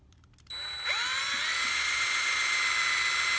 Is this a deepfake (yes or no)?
no